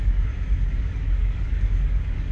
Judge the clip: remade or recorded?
remade